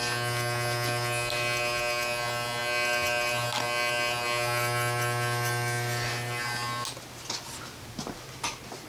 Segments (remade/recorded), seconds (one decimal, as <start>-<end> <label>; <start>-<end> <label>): 0.0-8.9 recorded